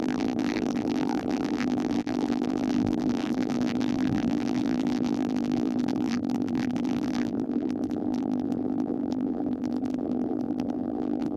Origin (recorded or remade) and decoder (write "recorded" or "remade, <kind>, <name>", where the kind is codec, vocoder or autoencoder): remade, vocoder, BigVGAN v2